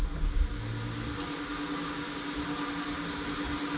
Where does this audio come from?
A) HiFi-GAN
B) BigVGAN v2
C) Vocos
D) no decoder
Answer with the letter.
D